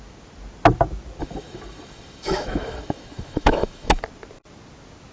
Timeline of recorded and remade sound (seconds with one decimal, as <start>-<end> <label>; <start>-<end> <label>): 0.0-1.2 recorded; 1.2-4.0 remade; 4.0-5.1 recorded